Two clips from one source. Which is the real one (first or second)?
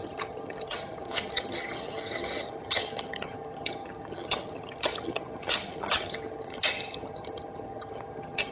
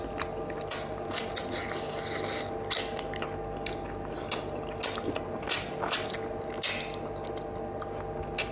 second